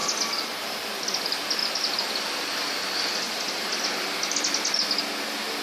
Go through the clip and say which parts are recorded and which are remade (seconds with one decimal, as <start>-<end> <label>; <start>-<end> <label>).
0.0-5.6 recorded